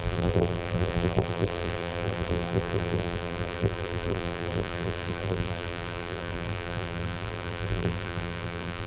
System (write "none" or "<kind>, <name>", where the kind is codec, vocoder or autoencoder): vocoder, BigVGAN v2